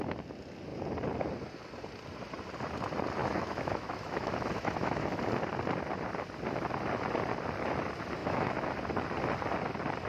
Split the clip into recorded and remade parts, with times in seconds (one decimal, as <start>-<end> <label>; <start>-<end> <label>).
0.0-3.2 recorded; 3.2-5.2 remade; 5.2-8.2 recorded; 8.2-8.7 remade; 8.7-10.1 recorded